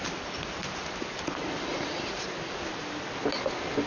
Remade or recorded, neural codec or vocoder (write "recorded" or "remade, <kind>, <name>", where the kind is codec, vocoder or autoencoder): recorded